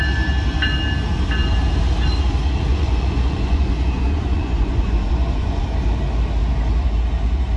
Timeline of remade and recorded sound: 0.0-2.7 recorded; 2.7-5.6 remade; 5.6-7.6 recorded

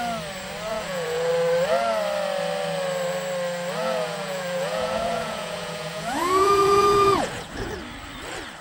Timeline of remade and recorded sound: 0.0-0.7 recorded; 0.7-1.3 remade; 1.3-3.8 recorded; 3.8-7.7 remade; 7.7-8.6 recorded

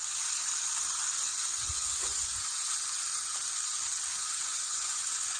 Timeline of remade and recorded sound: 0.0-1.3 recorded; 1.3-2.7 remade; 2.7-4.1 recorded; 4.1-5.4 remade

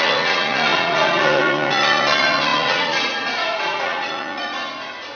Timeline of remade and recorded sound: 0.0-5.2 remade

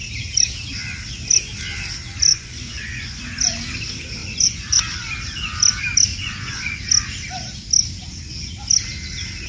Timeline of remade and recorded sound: 0.0-2.3 recorded; 2.3-3.2 remade; 3.2-4.2 recorded; 4.2-4.8 remade; 4.8-6.1 recorded; 6.1-6.8 remade; 6.8-9.5 recorded

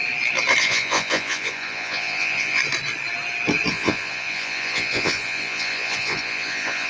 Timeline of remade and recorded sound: 0.0-0.6 recorded; 0.6-2.6 remade; 2.6-3.7 recorded; 3.7-6.9 remade

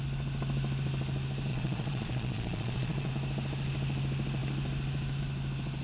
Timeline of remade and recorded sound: 0.0-1.5 recorded; 1.5-3.1 remade; 3.1-5.8 recorded